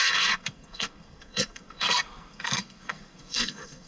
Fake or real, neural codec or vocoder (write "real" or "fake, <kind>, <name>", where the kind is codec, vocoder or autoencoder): fake, codec, SNAC